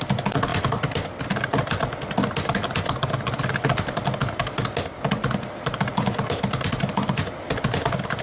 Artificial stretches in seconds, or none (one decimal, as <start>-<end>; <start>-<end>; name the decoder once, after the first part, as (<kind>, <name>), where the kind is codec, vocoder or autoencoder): none